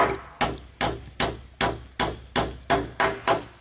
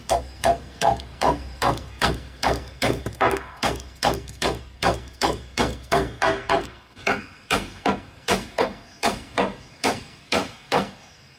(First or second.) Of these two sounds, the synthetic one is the second